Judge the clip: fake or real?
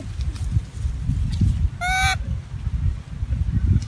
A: real